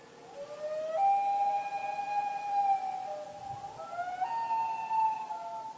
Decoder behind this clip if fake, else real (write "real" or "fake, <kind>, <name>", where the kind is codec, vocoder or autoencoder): real